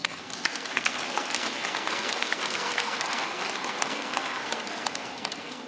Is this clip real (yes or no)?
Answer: no